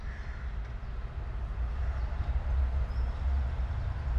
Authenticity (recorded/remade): recorded